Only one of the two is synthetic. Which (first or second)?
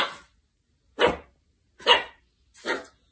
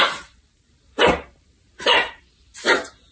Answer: second